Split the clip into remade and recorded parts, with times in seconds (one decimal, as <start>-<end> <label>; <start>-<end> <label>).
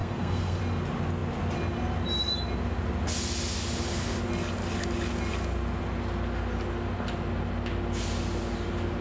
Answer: 0.0-0.6 remade; 0.6-9.0 recorded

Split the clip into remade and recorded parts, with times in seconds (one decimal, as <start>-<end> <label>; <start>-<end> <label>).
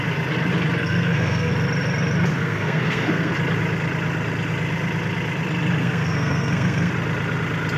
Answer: 0.0-0.8 recorded; 0.8-1.5 remade; 1.5-2.3 recorded; 2.3-3.3 remade; 3.3-5.8 recorded; 5.8-6.9 remade; 6.9-7.8 recorded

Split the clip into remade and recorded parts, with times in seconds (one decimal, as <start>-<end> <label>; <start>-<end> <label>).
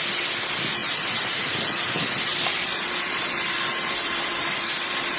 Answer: 0.0-5.2 recorded